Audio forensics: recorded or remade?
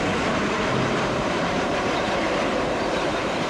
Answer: remade